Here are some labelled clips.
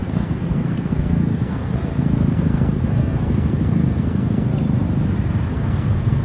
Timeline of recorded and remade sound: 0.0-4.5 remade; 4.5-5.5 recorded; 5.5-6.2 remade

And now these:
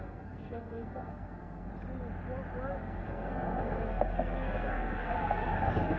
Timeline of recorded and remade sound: 0.0-1.7 remade; 1.7-2.7 recorded; 2.7-6.0 remade

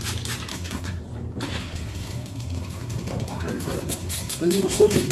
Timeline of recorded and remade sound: 0.0-0.5 recorded; 0.5-1.0 remade; 1.0-1.6 recorded; 1.6-5.1 remade

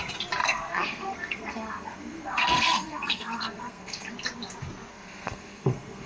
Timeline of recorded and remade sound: 0.0-0.4 recorded; 0.4-4.1 remade; 4.1-4.9 recorded; 4.9-6.1 remade

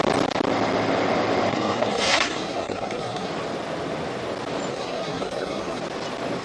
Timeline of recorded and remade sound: 0.0-1.5 recorded; 1.5-3.3 remade; 3.3-4.7 recorded; 4.7-5.8 remade; 5.8-6.4 recorded